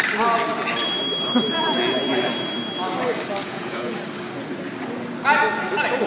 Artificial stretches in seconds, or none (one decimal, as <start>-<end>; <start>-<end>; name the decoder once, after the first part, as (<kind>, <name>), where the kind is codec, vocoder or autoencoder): 3.4-3.9 (vocoder, Vocos)